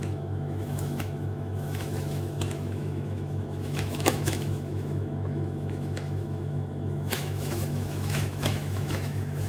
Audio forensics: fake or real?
fake